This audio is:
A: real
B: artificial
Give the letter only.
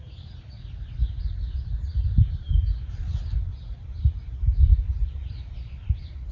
A